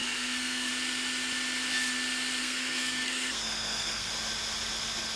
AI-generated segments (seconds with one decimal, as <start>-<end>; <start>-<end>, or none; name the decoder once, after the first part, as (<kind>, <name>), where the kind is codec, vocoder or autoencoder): 0.0-0.7 (codec, SNAC); 2.4-4.1